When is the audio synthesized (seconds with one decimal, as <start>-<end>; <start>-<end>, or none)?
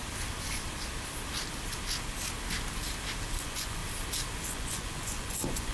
3.4-3.8; 4.5-5.7